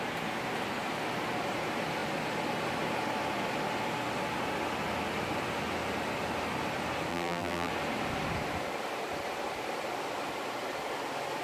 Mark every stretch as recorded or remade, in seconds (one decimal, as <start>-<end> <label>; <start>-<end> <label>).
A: 0.0-7.1 recorded; 7.1-7.7 remade; 7.7-11.4 recorded